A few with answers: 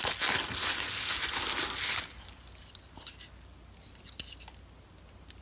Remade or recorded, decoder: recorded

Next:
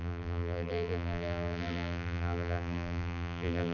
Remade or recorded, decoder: remade, vocoder, BigVGAN v2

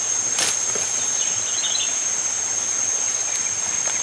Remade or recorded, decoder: recorded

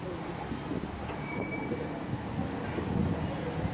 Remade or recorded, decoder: recorded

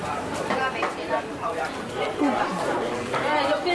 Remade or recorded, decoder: remade, vocoder, BigVGAN v2